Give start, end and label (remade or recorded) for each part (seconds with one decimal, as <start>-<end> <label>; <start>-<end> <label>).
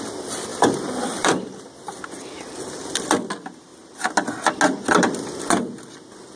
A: 0.0-0.5 recorded; 0.5-1.6 remade; 1.6-6.4 recorded